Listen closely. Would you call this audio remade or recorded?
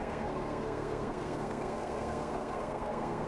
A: remade